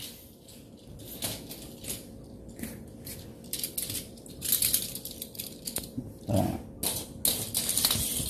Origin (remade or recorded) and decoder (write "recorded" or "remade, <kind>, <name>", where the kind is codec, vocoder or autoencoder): recorded